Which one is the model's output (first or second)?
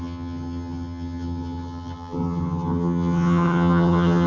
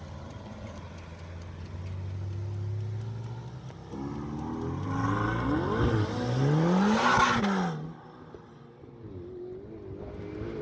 first